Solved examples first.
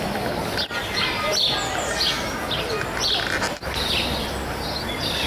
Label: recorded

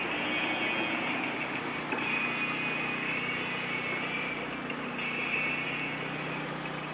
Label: recorded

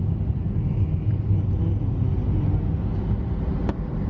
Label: recorded